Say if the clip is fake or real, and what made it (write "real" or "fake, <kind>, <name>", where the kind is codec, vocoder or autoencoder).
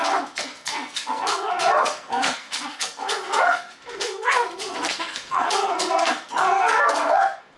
fake, codec, SNAC